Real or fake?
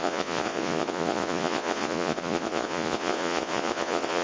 fake